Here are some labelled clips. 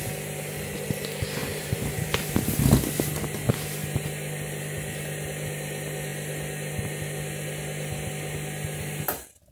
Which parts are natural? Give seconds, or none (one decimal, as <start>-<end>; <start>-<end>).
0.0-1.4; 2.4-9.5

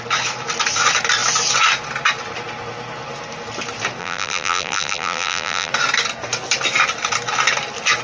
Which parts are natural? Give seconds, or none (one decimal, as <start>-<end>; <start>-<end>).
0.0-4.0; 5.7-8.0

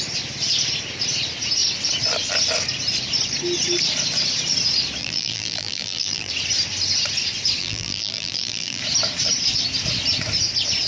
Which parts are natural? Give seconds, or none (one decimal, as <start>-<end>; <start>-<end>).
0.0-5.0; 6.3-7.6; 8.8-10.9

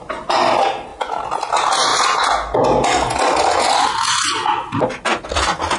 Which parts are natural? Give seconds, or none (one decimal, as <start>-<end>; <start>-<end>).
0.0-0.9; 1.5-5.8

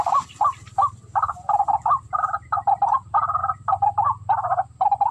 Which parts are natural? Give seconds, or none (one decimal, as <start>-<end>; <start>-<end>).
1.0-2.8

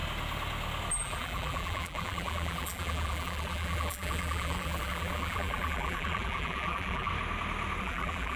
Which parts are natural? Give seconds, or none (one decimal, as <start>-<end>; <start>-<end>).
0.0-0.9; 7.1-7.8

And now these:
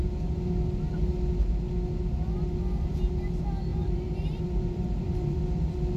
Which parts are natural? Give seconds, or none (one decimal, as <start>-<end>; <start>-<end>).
0.0-3.7; 5.4-6.0